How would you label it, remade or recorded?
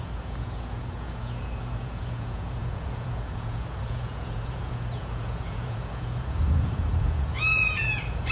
remade